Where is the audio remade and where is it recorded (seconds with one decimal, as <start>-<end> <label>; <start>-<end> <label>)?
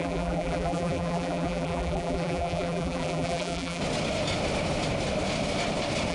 0.0-3.8 remade; 3.8-6.1 recorded